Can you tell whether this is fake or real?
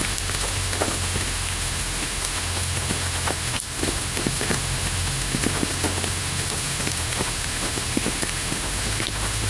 fake